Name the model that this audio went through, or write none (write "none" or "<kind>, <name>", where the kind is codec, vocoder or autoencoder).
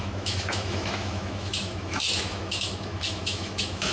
autoencoder, DAC-VAE